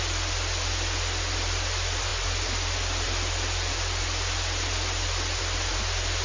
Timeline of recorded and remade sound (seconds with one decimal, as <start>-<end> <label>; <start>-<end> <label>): 0.0-6.2 recorded